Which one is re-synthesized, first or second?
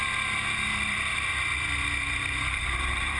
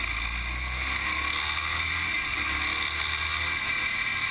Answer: first